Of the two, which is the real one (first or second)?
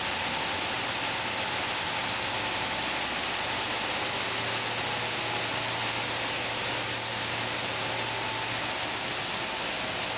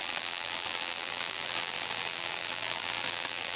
first